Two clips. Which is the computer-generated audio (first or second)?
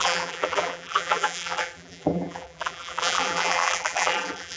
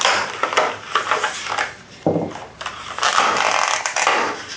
first